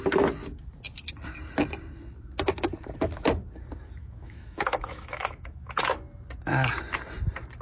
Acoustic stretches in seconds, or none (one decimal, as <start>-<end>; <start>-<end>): 0.0-4.0; 5.8-7.6